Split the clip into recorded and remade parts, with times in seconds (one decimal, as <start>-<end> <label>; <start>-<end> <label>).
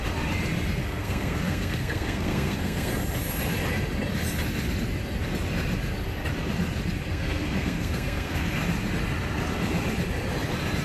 0.0-0.8 recorded; 0.8-2.9 remade; 2.9-7.1 recorded; 7.1-8.6 remade; 8.6-10.8 recorded